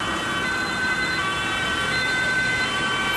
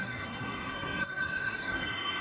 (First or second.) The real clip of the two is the first